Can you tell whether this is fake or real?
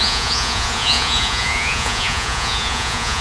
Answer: fake